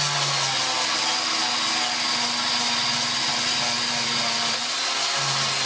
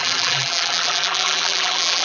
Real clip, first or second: first